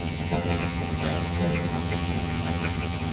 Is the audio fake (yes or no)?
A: yes